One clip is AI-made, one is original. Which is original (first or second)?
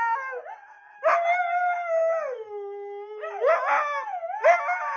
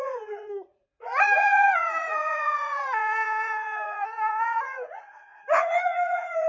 first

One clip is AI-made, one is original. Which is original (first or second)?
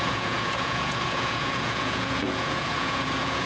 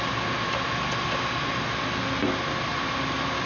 second